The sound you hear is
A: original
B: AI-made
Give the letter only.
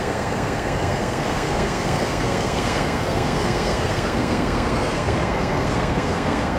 B